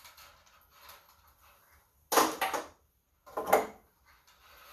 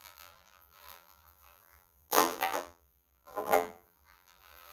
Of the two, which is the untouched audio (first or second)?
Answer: first